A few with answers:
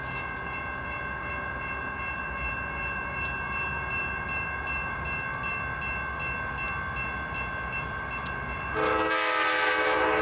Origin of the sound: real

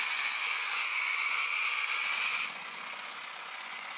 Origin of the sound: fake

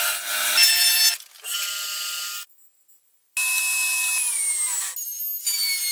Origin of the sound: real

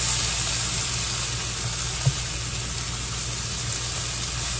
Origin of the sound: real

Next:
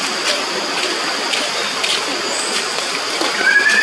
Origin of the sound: real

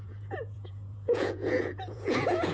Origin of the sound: fake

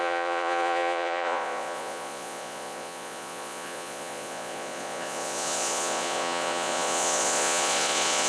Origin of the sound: fake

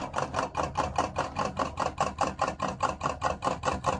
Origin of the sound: real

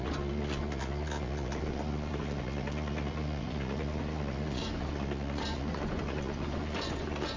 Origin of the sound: fake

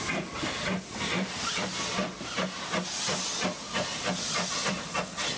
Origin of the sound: real